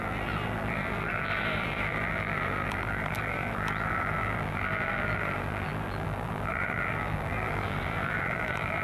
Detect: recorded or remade remade